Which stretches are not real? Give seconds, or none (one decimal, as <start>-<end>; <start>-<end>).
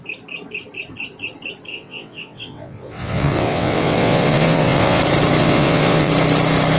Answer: 1.7-5.0; 5.4-6.1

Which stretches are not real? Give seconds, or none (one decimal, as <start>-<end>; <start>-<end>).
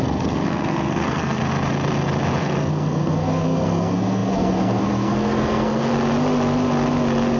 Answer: 0.0-1.4; 2.4-5.9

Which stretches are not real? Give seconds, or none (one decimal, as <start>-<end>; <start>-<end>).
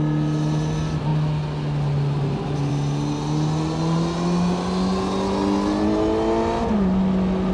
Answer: none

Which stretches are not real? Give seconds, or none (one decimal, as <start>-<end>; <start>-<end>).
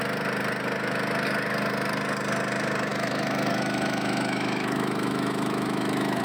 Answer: 2.9-6.2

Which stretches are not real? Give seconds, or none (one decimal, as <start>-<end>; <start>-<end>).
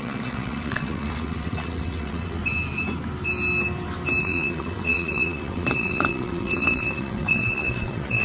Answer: 0.0-2.4; 4.2-8.2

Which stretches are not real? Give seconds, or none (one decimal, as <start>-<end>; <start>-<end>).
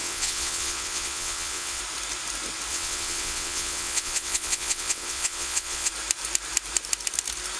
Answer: 0.0-1.8; 2.7-5.9